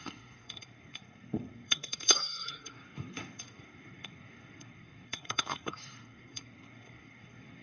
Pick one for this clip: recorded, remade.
remade